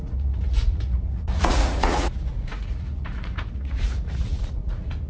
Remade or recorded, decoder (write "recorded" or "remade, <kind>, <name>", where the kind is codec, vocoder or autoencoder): remade, vocoder, Vocos